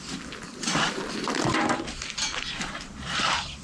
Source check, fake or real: fake